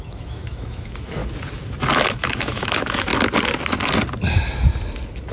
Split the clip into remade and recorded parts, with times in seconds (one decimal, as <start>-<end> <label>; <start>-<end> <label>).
0.0-1.2 remade; 1.2-2.1 recorded; 2.1-3.1 remade; 3.1-5.3 recorded